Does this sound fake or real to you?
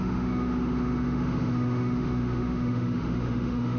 fake